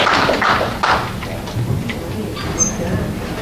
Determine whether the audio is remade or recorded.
recorded